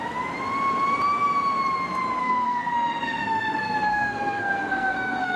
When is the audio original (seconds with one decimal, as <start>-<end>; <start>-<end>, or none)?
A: 0.0-2.2

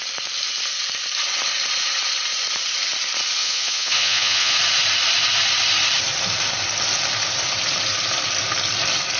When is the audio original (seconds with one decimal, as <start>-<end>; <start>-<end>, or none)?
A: 0.0-3.4; 4.5-9.2

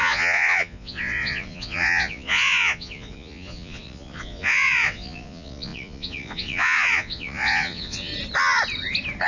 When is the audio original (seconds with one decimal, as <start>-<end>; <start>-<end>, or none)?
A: 8.1-9.3